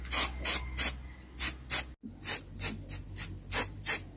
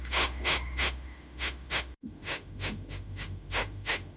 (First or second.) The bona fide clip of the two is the first